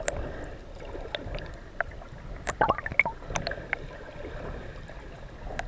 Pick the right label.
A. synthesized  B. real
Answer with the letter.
B